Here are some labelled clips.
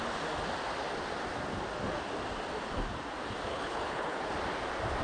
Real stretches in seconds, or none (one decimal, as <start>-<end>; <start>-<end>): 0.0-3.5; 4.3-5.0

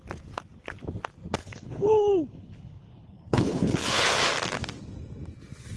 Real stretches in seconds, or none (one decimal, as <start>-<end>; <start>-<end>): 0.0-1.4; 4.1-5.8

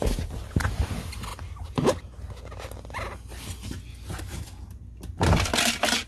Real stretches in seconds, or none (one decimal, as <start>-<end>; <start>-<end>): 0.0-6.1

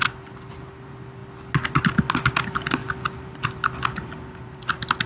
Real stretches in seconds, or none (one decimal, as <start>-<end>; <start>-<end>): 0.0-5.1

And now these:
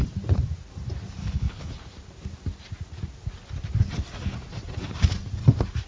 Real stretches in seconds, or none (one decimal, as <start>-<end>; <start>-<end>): 0.0-1.2; 1.7-5.9